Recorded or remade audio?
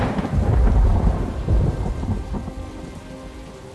recorded